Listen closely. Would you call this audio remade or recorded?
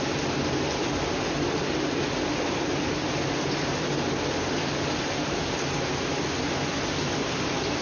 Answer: recorded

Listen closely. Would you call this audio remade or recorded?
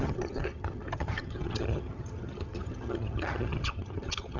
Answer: remade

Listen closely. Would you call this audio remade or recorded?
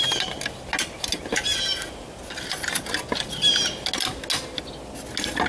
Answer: recorded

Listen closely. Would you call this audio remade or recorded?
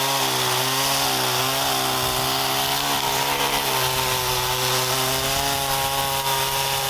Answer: recorded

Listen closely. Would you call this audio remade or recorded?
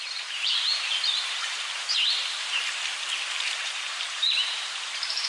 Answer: remade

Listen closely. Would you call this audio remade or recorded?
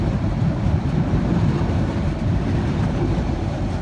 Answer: remade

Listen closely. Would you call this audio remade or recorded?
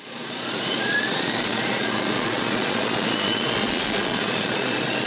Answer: remade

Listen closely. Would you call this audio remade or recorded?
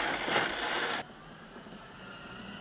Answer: recorded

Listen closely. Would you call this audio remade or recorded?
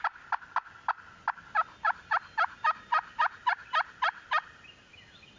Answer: recorded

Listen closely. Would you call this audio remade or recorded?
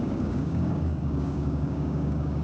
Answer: remade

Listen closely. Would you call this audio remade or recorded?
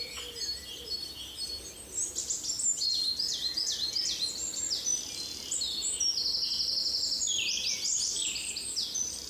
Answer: recorded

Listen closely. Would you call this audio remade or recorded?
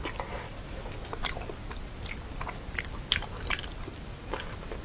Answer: recorded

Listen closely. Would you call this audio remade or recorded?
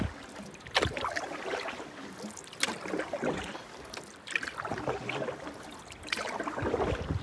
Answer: recorded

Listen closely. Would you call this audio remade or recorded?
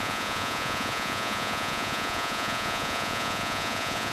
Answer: remade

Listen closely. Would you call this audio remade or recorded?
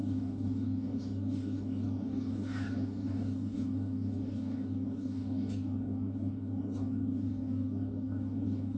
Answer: remade